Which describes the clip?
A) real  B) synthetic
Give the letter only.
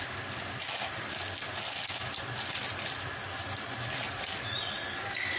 A